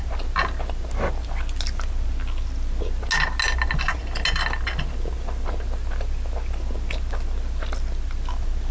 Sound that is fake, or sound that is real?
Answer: real